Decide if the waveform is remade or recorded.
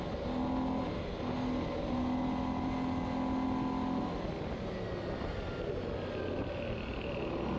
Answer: recorded